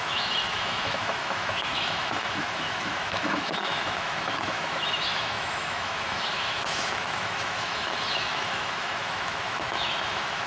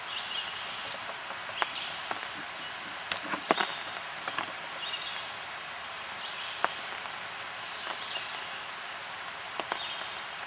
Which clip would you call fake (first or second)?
first